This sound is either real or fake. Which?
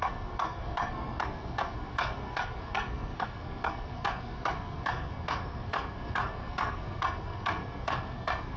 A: fake